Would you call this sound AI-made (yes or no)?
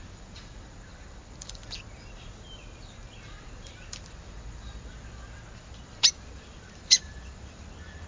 yes